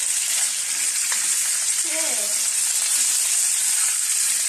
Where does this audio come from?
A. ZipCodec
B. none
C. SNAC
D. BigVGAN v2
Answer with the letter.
B